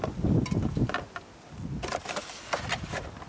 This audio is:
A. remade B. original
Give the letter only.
B